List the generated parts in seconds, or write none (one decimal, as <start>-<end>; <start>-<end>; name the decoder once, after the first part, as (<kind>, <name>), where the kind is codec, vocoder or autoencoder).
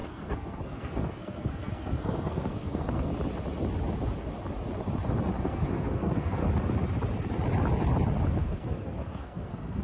0.0-3.1 (codec, SNAC); 5.4-6.4; 8.4-9.8